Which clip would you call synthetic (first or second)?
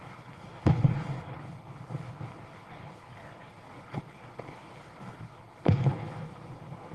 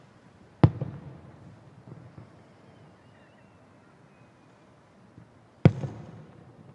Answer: first